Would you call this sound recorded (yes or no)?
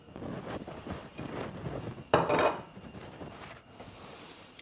yes